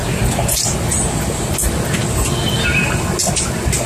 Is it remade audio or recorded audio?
recorded